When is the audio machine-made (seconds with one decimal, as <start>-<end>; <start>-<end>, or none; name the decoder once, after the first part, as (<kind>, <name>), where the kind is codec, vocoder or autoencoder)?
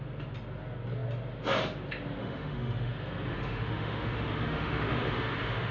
2.2-2.9 (autoencoder, DAC-VAE); 3.3-5.7